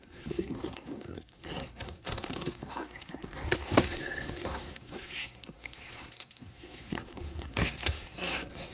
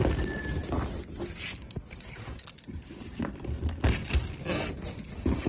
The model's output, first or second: first